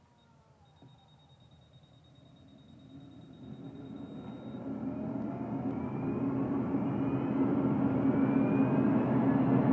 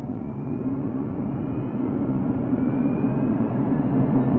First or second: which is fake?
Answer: second